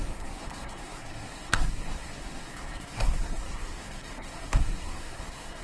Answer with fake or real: fake